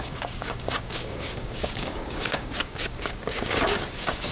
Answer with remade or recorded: remade